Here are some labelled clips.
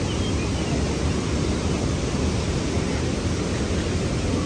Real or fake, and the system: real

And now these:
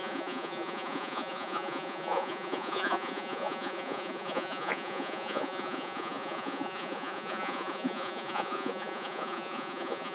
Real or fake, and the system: fake, vocoder, Vocos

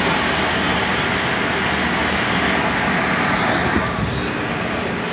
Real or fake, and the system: real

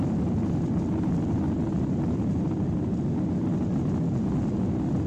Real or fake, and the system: real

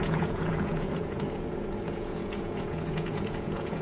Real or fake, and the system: fake, vocoder, Vocos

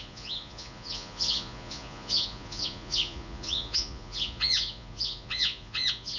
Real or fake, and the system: fake, vocoder, Vocos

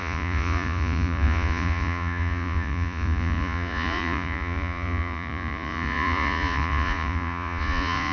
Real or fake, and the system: fake, vocoder, Vocos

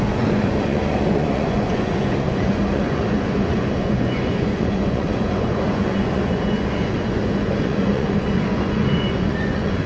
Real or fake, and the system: fake, vocoder, Vocos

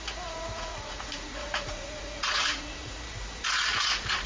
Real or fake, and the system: fake, vocoder, Vocos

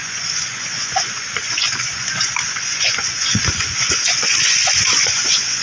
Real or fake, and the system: fake, vocoder, Vocos